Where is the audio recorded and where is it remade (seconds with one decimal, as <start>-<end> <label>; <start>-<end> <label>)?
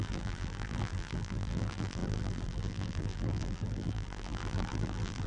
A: 0.0-5.3 remade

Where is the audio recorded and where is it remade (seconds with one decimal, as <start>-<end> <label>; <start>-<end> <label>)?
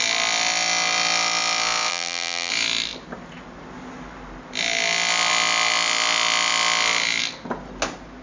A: 0.0-1.9 recorded; 1.9-2.5 remade; 2.5-8.2 recorded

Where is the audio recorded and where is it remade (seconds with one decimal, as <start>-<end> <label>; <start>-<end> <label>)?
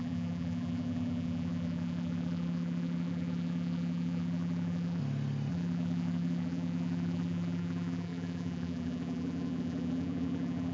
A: 0.0-5.0 remade; 5.0-5.5 recorded; 5.5-10.7 remade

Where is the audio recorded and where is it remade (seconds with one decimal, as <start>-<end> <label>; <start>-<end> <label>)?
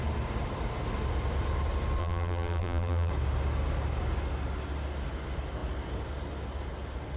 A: 0.0-2.0 recorded; 2.0-3.1 remade; 3.1-7.2 recorded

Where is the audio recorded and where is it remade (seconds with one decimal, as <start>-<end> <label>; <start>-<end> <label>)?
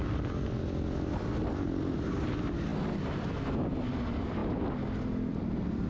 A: 0.0-2.7 recorded; 2.7-3.5 remade; 3.5-5.9 recorded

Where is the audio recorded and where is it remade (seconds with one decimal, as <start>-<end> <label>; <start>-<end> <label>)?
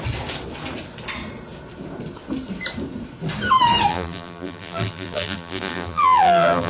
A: 0.0-3.9 recorded; 3.9-6.7 remade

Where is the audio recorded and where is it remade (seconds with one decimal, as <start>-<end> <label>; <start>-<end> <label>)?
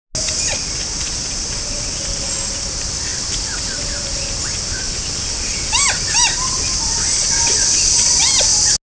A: 0.0-8.8 recorded